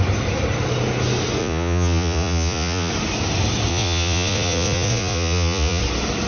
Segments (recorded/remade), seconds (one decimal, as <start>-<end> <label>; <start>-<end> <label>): 0.0-1.4 recorded; 1.4-2.9 remade; 2.9-3.7 recorded; 3.7-5.8 remade; 5.8-6.3 recorded